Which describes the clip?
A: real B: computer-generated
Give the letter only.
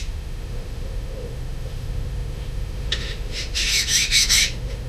B